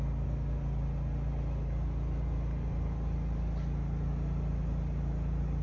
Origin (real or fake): real